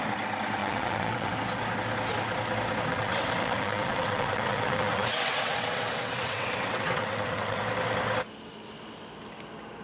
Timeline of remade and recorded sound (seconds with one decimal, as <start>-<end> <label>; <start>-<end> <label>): 0.0-0.6 recorded; 0.6-1.3 remade; 1.3-2.9 recorded; 2.9-7.6 remade; 7.6-9.8 recorded